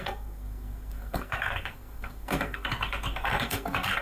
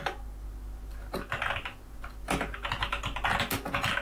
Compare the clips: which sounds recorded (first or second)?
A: second